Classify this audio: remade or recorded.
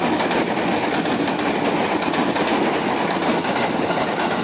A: recorded